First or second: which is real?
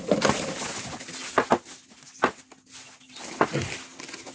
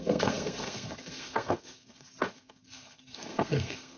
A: first